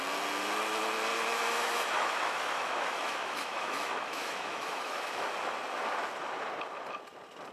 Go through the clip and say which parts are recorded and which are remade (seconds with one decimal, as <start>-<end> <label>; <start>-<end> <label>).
0.0-1.1 recorded; 1.1-5.3 remade; 5.3-7.5 recorded